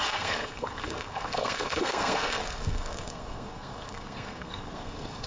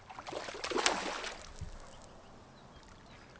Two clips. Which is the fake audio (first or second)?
first